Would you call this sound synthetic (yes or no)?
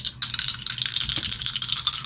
no